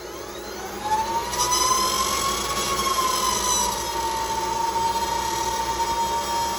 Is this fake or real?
real